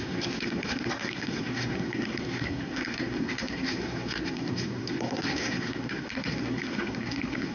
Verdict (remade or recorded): remade